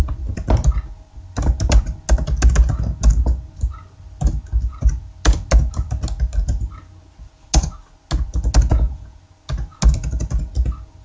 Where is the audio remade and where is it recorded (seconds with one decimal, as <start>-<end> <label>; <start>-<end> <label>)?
0.0-8.7 recorded; 8.7-9.2 remade; 9.2-11.0 recorded